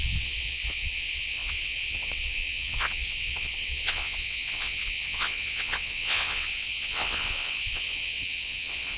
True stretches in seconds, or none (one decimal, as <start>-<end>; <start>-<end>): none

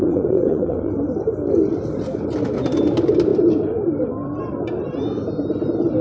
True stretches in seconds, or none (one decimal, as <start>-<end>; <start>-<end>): 0.9-6.0

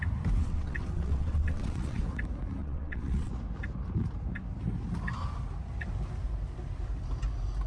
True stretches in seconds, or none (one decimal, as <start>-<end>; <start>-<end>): 0.0-0.4; 2.0-2.6; 3.3-7.7

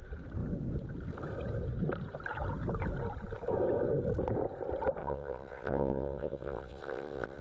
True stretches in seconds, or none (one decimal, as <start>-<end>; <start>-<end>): 0.0-5.0